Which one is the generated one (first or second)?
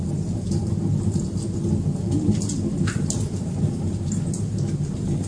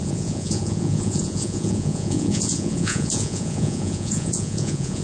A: second